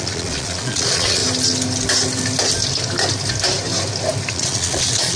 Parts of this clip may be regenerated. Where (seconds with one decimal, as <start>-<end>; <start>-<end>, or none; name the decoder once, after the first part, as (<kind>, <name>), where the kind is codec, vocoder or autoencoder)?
0.0-1.2 (vocoder, Vocos); 4.3-5.2